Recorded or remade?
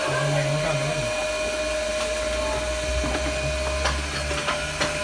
recorded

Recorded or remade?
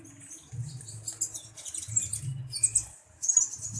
recorded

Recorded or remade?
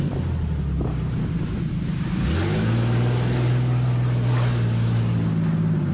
recorded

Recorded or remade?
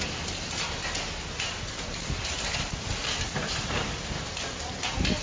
recorded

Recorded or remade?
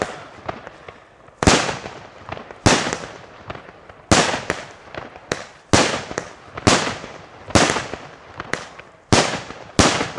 recorded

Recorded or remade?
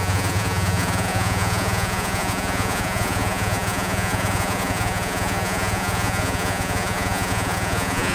remade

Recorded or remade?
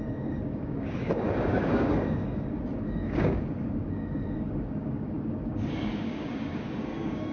remade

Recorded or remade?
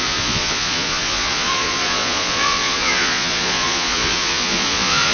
remade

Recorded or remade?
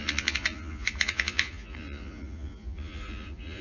remade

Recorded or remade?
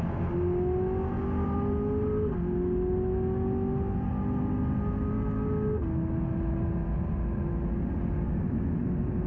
recorded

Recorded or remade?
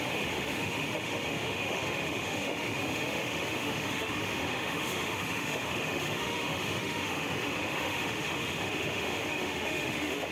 remade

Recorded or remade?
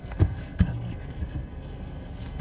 remade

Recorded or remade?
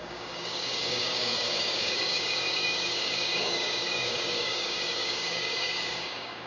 remade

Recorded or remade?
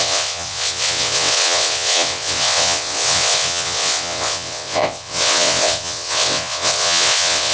remade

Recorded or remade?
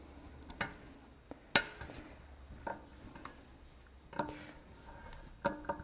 recorded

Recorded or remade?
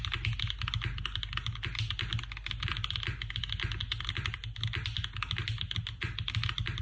recorded